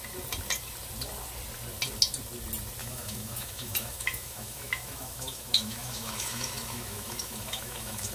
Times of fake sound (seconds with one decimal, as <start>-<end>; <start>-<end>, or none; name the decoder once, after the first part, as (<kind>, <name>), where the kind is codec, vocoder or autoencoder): 2.8-8.1 (autoencoder, DAC-VAE)